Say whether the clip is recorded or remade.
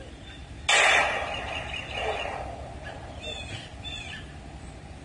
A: recorded